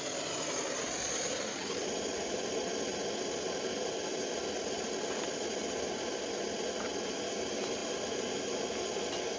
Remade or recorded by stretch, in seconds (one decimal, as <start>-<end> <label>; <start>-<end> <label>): 0.0-9.4 recorded